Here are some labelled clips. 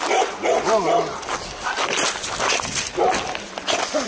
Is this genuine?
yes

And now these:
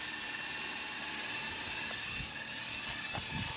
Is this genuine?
yes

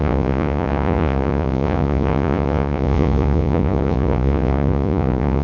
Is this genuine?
no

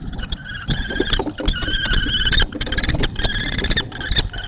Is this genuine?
yes